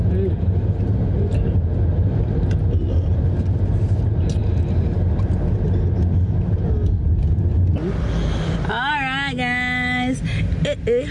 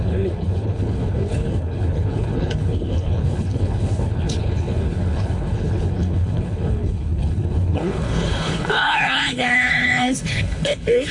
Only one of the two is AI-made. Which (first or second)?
second